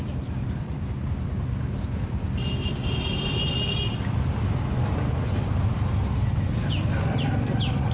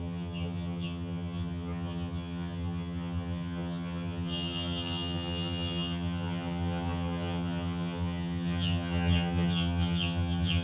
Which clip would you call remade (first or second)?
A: second